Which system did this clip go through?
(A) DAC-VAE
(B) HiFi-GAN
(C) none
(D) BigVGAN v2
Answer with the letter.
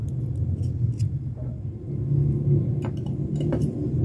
C